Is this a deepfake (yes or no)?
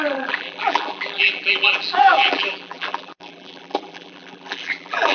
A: yes